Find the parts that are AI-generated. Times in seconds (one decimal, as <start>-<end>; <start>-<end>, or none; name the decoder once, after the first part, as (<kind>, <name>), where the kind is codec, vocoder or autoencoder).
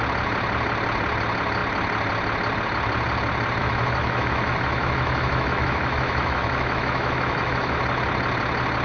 3.6-7.8 (autoencoder, DAC-VAE)